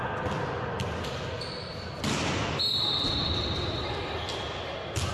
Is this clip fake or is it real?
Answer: real